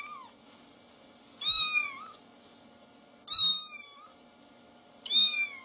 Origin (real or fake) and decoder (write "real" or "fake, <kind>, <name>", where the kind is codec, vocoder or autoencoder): real